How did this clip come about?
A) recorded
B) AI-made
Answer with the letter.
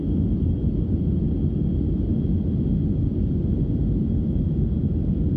A